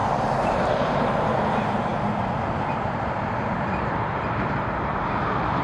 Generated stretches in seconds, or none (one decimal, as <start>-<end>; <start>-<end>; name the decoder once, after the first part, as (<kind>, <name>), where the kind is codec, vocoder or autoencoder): 0.0-5.6 (vocoder, BigVGAN v2)